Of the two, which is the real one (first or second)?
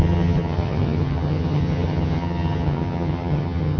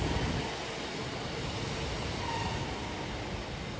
second